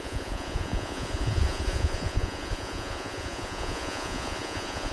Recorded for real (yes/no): no